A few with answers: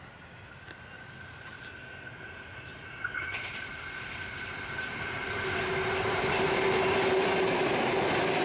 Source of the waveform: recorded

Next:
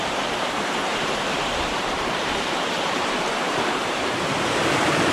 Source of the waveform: remade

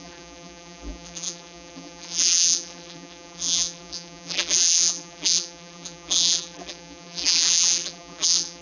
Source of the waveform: remade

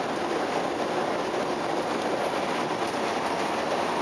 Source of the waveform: recorded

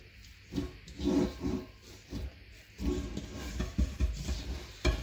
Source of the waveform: recorded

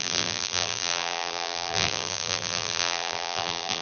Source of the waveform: remade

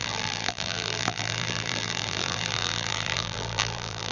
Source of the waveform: remade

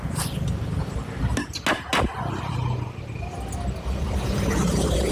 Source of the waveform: recorded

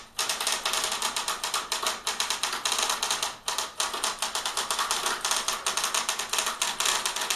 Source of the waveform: recorded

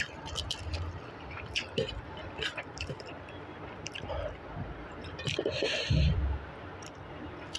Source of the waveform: remade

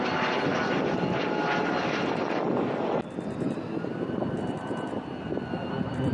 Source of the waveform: recorded